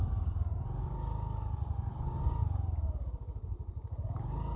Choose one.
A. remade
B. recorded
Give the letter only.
B